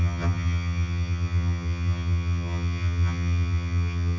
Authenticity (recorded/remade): remade